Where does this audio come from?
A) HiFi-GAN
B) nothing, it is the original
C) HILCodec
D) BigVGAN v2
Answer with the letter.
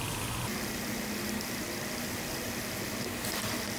B